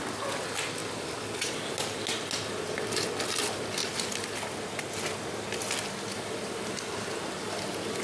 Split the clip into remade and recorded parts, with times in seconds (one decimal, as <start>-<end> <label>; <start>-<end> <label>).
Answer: 0.0-8.0 recorded